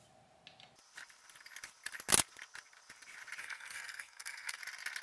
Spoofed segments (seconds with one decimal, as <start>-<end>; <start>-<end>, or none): 3.4-4.6